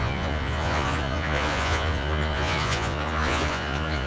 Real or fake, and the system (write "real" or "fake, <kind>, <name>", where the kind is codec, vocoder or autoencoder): fake, vocoder, Vocos